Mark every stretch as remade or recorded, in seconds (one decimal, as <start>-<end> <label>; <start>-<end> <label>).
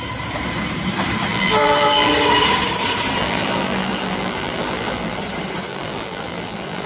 0.0-1.3 recorded; 1.3-2.1 remade; 2.1-3.2 recorded; 3.2-5.2 remade; 5.2-5.7 recorded; 5.7-6.9 remade